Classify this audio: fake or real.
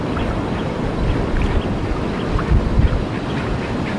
real